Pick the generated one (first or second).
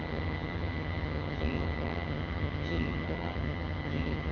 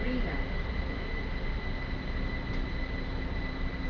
first